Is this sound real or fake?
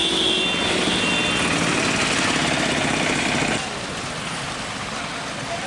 real